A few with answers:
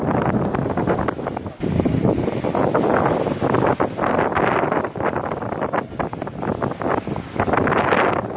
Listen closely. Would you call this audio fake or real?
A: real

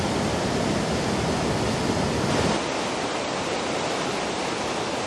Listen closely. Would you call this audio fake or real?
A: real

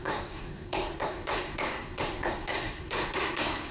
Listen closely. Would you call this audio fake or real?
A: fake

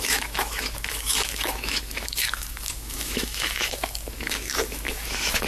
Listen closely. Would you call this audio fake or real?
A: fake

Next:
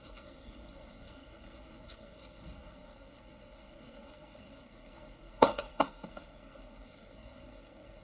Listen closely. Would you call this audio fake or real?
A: fake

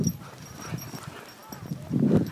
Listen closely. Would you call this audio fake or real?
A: real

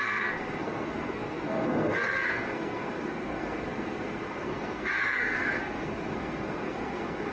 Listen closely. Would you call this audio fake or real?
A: fake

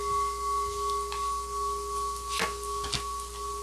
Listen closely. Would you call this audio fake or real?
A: real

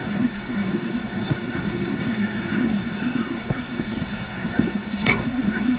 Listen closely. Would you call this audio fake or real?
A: fake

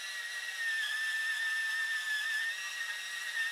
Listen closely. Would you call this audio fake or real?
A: real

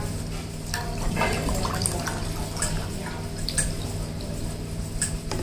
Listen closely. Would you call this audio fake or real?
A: real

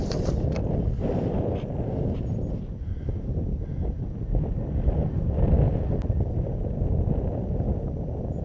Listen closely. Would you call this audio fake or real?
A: real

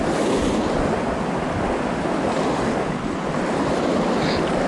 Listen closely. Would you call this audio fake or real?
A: real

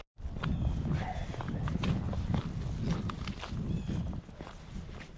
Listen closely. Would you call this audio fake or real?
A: real